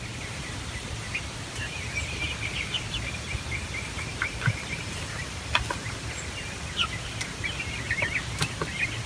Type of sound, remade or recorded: recorded